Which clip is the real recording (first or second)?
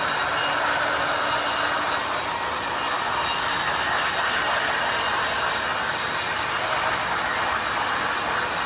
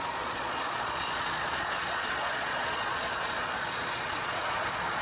first